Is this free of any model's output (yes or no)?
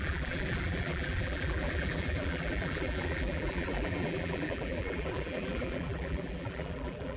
no